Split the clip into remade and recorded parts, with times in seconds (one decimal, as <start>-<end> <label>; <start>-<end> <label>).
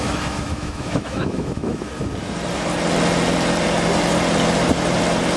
0.0-1.9 remade; 1.9-5.4 recorded